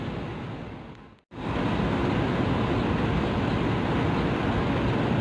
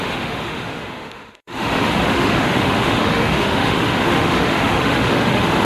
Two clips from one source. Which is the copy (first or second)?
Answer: second